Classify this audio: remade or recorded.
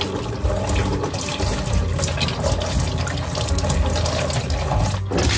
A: recorded